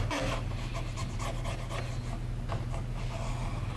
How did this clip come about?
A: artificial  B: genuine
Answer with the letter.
B